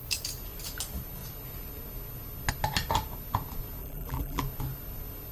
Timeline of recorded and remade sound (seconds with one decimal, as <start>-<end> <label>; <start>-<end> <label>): 0.0-3.8 recorded; 3.8-4.4 remade; 4.4-5.3 recorded